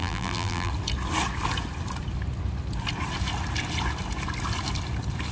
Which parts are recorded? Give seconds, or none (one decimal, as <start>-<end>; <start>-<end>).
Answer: 0.7-5.3